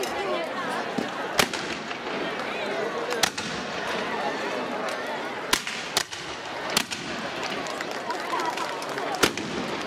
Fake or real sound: real